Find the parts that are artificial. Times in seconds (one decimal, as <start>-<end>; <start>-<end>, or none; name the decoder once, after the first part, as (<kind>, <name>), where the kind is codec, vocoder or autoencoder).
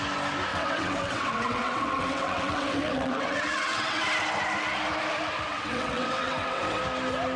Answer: 0.5-4.0 (vocoder, WaveNeXt); 5.5-6.8